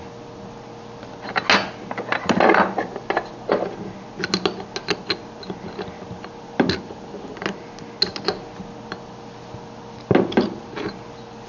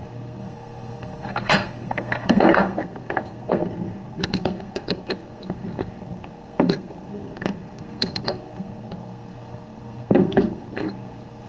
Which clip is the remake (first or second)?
second